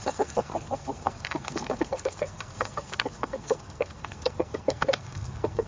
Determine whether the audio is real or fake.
fake